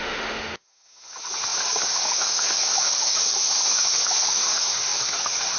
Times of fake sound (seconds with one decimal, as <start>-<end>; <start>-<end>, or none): 0.0-5.6